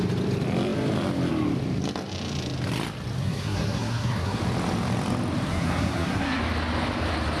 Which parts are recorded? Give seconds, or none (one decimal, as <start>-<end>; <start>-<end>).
0.0-3.2; 4.4-5.5; 6.4-7.4